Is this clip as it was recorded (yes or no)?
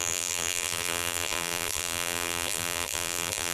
no